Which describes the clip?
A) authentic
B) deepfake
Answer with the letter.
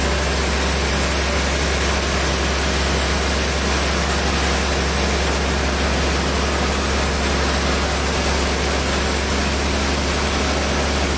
A